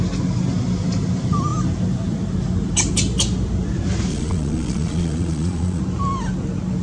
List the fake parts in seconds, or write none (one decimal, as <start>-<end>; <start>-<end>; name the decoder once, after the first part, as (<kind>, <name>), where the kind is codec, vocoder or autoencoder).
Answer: 4.1-5.8 (vocoder, Vocos)